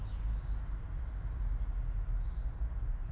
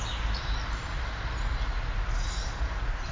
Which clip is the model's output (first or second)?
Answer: second